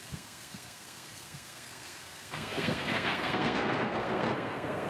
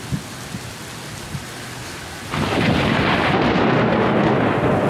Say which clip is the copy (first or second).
first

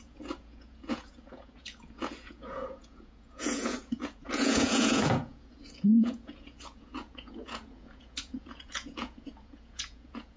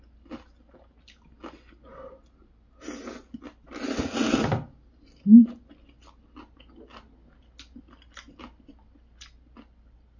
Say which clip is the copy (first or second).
first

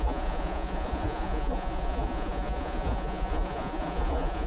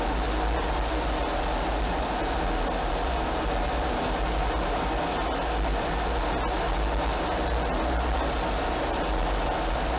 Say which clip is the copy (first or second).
first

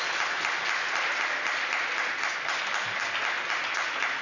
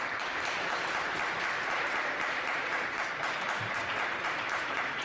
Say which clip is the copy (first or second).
second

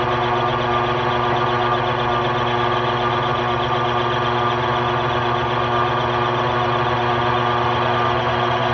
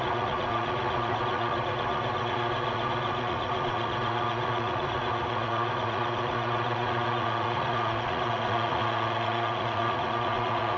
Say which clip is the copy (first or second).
second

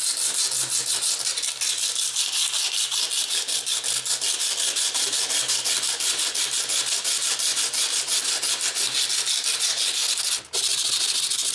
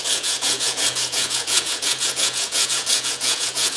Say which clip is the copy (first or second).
second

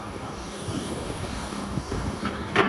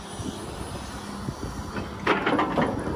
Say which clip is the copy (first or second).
first